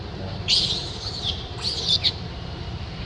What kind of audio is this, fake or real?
fake